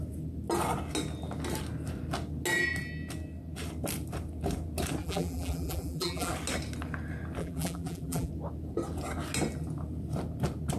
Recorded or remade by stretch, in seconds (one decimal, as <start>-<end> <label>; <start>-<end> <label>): 0.0-5.0 recorded; 5.0-6.3 remade; 6.3-7.4 recorded; 7.4-8.3 remade; 8.3-10.8 recorded